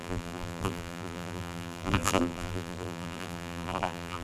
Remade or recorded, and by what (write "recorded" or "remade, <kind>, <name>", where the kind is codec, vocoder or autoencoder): remade, vocoder, BigVGAN v2